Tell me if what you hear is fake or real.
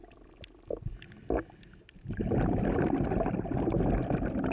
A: real